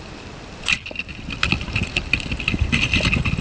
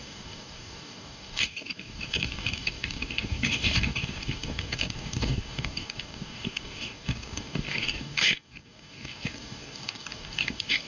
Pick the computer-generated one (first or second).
second